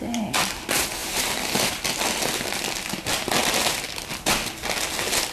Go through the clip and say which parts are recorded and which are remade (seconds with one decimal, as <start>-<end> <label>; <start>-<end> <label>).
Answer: 0.0-5.3 recorded